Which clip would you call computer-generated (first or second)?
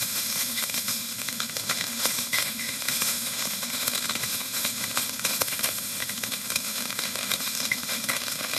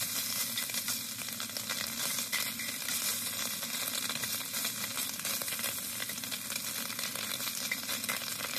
first